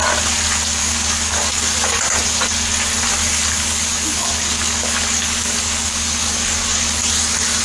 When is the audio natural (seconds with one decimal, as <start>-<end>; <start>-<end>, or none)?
0.0-0.8; 2.0-3.2; 7.0-7.6